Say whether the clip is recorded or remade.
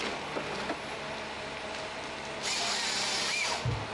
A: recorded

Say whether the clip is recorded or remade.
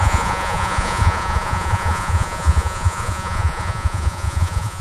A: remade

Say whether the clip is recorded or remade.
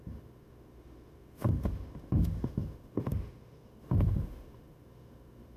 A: remade